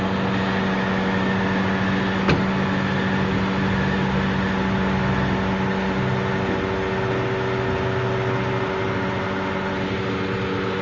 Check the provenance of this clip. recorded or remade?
recorded